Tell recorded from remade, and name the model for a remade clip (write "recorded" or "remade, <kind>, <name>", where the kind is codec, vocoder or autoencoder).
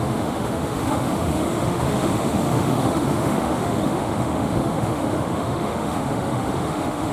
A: remade, autoencoder, DAC-VAE